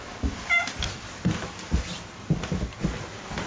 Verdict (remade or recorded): recorded